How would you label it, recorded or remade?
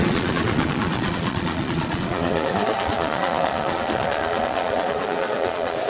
remade